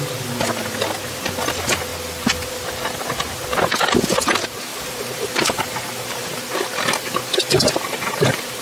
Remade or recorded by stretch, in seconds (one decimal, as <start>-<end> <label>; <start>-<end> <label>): 0.0-4.7 recorded; 4.7-8.6 remade